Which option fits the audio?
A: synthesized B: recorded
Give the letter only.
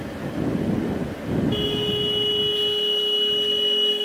B